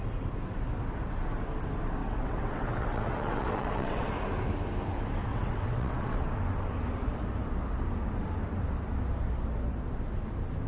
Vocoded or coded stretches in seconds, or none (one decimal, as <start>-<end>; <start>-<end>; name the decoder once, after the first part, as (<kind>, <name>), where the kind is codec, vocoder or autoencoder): 2.0-4.1 (vocoder, WaveNeXt); 5.3-6.3